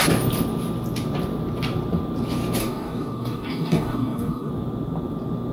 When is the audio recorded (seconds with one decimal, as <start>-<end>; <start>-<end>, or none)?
0.0-2.6; 4.5-5.5